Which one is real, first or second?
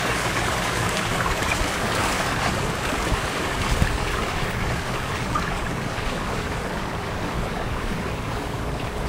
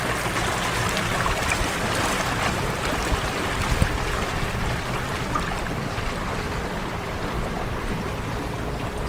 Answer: second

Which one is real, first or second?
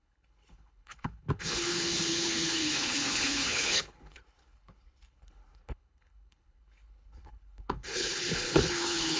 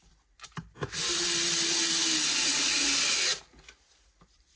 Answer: second